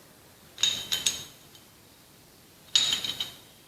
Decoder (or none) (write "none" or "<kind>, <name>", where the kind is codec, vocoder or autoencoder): none